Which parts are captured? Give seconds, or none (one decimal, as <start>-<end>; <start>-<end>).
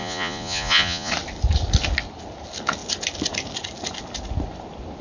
1.1-5.0